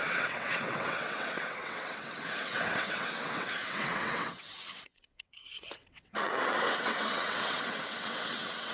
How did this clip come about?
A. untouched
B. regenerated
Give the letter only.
B